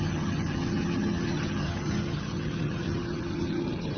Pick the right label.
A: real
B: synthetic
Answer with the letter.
B